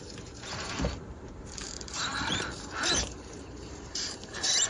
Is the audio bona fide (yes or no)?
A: no